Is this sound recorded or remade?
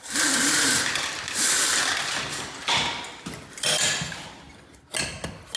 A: recorded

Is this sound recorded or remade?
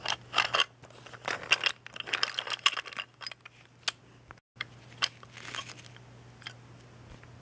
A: recorded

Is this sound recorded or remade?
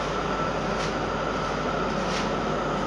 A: recorded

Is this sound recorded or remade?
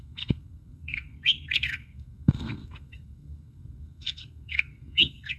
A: remade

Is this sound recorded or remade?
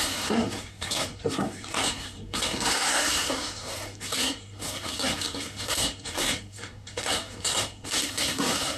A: remade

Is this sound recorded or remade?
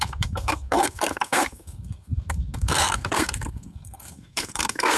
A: remade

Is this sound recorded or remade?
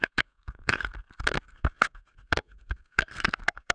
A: remade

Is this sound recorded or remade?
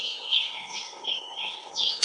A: remade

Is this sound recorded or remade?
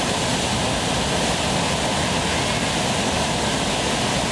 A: recorded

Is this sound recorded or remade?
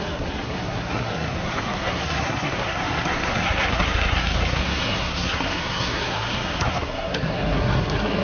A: remade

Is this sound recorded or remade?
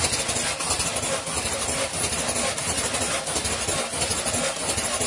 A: recorded